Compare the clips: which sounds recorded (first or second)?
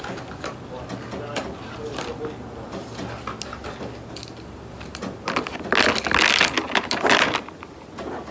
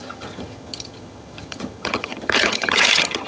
first